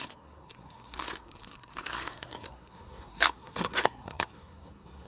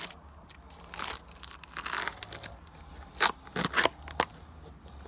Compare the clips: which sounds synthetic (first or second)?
first